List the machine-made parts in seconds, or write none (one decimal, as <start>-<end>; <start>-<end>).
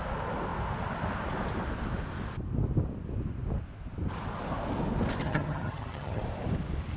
5.2-6.2